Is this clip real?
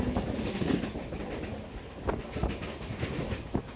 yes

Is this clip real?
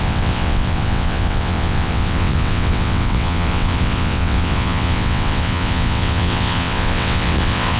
no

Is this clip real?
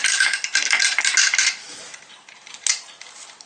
yes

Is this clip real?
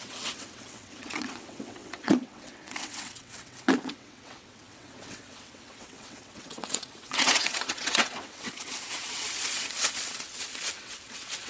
no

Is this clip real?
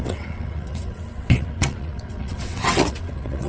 no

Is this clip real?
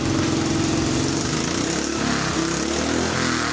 yes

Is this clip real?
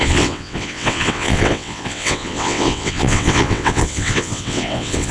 no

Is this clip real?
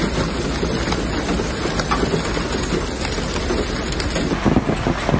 yes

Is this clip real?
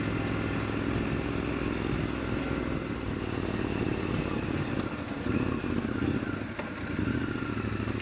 yes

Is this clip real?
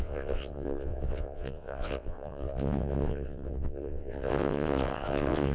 no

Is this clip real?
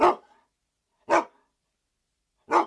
yes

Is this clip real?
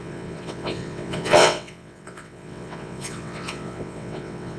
no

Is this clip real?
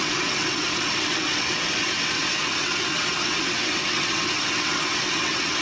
no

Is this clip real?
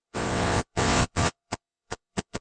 no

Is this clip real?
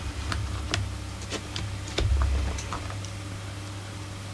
yes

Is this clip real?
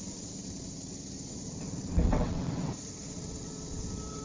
no